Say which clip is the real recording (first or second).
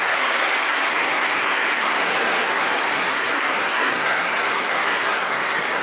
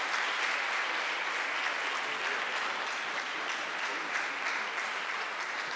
second